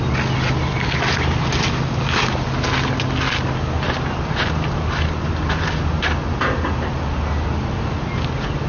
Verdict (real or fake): real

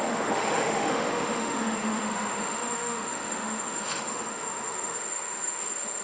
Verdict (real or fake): fake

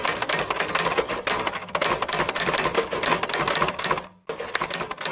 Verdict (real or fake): real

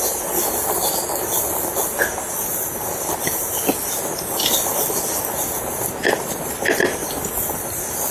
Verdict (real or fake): real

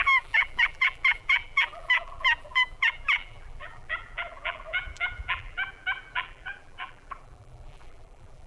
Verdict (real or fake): fake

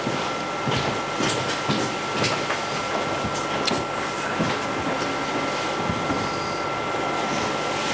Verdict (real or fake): real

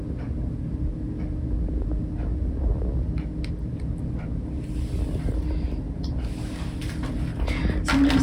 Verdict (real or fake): real